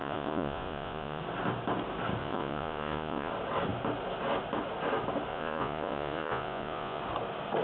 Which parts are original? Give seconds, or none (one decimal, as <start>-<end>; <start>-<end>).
1.2-2.2; 3.3-5.3; 7.0-7.6